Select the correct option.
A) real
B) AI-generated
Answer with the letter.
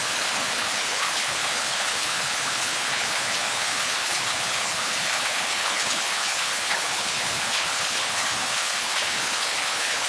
B